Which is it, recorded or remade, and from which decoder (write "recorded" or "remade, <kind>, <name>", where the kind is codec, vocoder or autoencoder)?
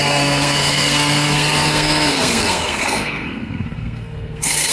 remade, codec, SNAC